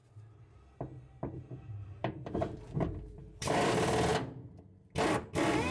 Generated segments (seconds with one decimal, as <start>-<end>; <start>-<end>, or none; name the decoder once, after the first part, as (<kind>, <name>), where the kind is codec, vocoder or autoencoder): 2.0-4.1 (vocoder, BigVGAN v2)